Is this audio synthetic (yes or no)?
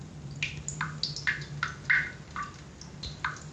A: no